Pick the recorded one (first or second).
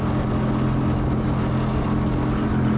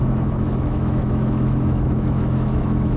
first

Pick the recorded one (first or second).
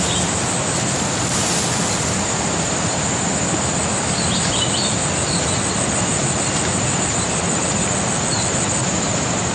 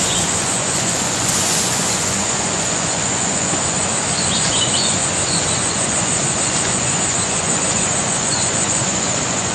first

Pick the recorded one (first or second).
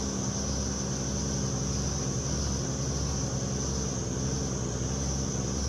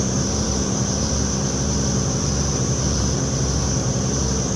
first